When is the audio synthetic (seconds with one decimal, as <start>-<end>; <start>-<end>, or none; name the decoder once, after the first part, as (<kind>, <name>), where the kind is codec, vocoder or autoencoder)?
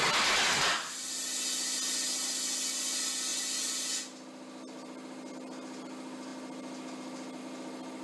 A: none